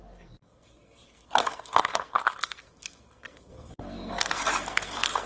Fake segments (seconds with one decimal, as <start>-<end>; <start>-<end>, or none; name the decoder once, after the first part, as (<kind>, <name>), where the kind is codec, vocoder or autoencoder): 0.0-5.3 (codec, SNAC)